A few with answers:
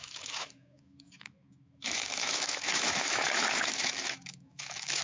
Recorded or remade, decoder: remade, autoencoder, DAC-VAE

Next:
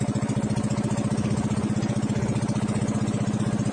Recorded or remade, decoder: recorded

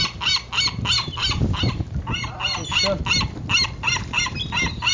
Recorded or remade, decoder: recorded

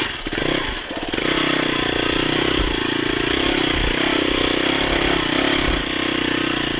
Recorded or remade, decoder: recorded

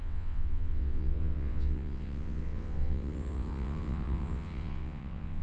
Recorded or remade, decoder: remade, vocoder, WaveNeXt